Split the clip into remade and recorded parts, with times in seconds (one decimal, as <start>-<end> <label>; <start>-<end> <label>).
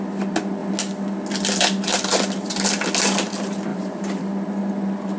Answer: 0.0-3.7 recorded; 3.7-4.2 remade; 4.2-5.2 recorded